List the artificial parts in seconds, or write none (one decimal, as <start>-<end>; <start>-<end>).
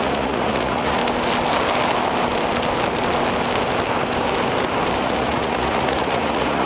0.0-1.0; 5.0-6.7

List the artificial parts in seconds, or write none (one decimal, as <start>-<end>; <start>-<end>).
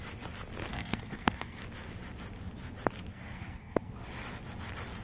0.7-1.6; 3.1-3.9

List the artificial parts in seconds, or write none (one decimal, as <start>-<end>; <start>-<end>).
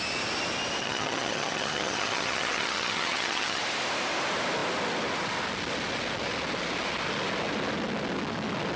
0.8-3.6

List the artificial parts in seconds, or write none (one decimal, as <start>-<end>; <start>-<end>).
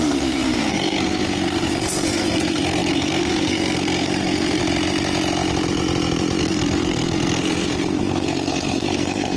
0.0-4.6; 6.4-9.4